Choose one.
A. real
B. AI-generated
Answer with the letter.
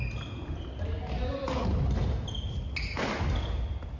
A